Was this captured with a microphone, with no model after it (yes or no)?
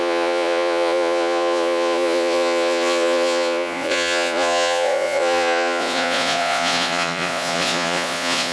no